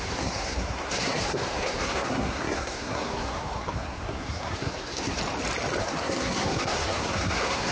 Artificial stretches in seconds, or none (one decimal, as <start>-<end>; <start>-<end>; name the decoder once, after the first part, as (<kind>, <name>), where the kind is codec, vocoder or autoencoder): 0.0-5.2 (codec, SNAC); 5.8-7.7